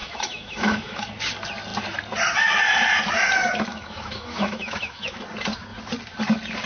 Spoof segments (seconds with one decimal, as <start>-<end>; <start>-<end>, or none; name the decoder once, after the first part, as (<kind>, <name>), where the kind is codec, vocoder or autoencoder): 0.0-1.1 (autoencoder, DAC-VAE); 3.7-5.2